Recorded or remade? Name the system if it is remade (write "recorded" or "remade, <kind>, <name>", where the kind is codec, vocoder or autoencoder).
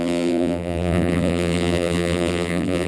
remade, vocoder, BigVGAN v2